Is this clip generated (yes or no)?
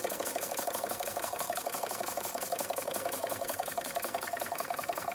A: yes